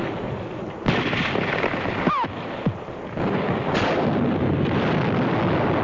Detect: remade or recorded recorded